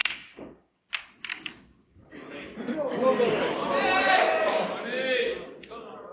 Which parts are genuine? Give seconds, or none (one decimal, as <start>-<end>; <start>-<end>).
0.9-1.3; 2.1-4.0; 4.7-6.1